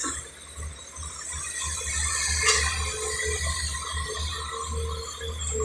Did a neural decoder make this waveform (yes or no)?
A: no